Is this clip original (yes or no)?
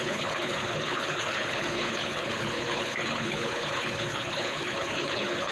no